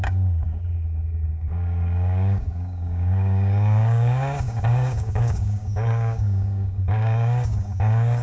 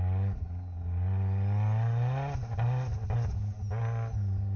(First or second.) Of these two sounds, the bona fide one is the second